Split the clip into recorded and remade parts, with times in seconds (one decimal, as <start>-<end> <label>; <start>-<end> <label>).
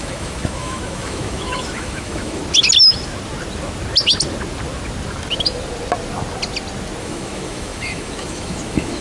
0.0-2.4 remade; 2.4-7.0 recorded; 7.0-9.0 remade